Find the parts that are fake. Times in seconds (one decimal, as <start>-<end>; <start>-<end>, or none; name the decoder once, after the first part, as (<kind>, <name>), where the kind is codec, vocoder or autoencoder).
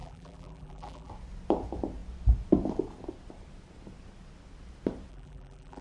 0.0-1.1 (vocoder, BigVGAN v2); 5.1-5.8